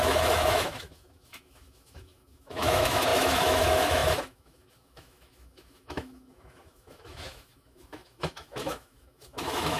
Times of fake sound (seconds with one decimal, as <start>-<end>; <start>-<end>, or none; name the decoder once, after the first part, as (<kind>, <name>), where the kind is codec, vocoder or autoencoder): 0.0-9.8 (autoencoder, DAC-VAE)

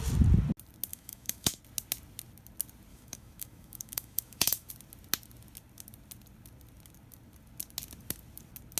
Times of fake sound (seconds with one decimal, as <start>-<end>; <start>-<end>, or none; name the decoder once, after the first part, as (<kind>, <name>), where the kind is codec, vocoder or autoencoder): 0.9-1.6 (autoencoder, DAC-VAE); 2.9-4.7

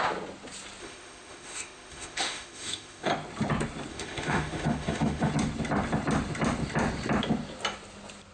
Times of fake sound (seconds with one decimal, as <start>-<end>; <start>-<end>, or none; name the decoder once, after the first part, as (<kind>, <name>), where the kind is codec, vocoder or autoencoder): 0.8-3.1 (autoencoder, DAC-VAE); 3.9-5.3

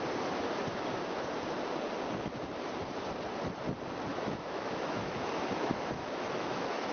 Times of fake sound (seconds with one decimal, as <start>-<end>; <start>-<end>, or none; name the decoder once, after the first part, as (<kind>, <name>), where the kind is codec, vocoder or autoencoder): 4.1-6.9 (autoencoder, DAC-VAE)

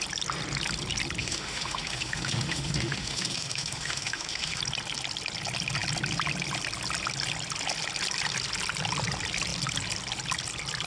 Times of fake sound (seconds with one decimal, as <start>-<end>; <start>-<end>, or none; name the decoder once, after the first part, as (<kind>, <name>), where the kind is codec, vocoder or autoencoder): 1.2-4.6 (autoencoder, DAC-VAE)